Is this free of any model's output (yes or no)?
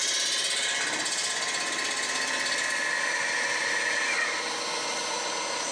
yes